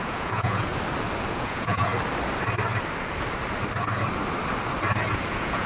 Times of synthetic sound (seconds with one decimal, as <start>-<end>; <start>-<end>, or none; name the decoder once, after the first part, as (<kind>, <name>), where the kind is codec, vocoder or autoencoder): 0.0-0.7 (vocoder, Vocos); 1.3-1.9; 5.3-5.7